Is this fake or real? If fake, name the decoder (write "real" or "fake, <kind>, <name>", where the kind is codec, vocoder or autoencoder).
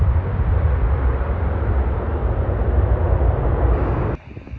real